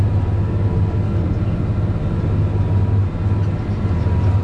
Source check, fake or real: real